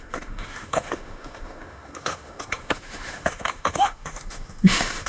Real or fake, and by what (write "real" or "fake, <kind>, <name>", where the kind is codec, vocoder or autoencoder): fake, autoencoder, DAC-VAE